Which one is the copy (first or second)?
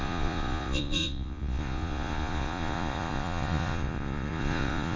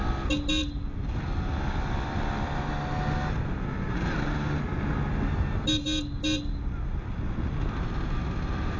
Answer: first